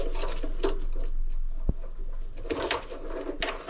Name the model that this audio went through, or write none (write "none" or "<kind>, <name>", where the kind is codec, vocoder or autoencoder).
none